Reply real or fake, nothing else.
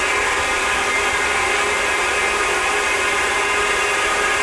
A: real